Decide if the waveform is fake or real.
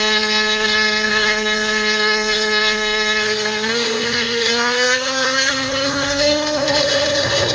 fake